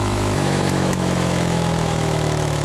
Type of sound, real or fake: fake